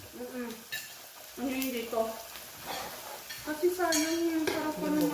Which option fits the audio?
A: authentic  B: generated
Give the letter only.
A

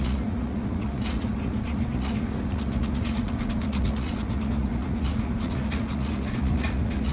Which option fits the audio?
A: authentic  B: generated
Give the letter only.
B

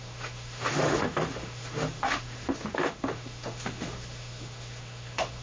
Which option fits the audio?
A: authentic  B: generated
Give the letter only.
B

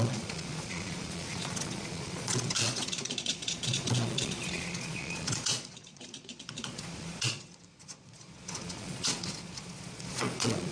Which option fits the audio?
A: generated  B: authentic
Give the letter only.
A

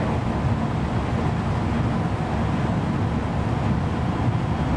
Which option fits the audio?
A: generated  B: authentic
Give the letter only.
B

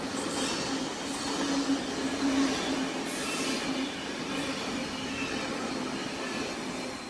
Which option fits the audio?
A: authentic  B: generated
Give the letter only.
A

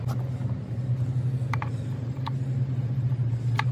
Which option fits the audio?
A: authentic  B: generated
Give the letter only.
A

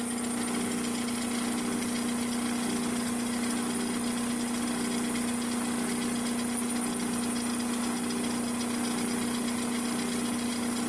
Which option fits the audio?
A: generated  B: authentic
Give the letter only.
B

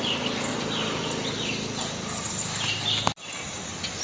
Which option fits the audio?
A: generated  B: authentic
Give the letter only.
B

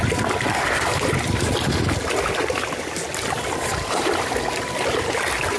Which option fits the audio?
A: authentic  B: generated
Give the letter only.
A